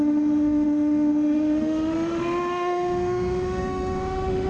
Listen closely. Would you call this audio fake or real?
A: fake